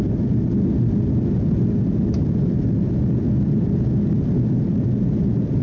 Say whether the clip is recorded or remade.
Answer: recorded